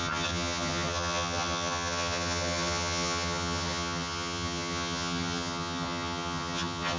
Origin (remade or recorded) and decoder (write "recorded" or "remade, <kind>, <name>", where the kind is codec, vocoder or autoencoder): remade, vocoder, HiFi-GAN